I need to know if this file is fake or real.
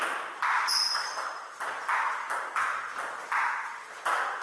real